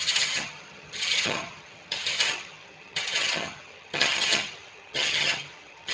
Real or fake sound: fake